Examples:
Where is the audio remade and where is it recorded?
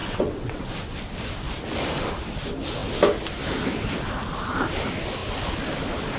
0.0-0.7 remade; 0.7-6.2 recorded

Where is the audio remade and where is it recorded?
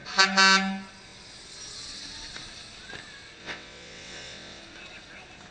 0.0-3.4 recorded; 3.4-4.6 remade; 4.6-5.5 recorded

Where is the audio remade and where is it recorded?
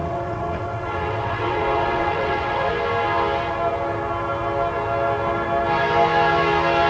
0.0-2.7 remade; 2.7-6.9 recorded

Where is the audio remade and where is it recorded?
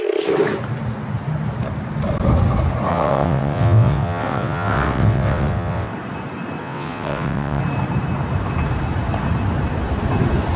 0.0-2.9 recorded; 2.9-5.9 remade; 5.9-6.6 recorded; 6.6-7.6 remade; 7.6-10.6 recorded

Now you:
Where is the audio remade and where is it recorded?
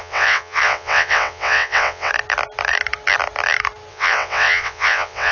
0.0-2.1 remade; 2.1-3.9 recorded; 3.9-5.3 remade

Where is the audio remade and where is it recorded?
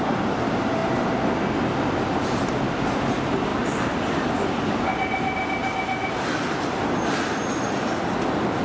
0.0-8.6 recorded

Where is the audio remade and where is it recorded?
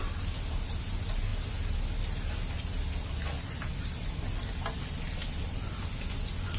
0.0-6.6 recorded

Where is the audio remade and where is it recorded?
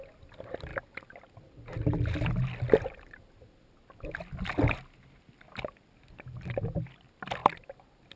0.0-8.2 recorded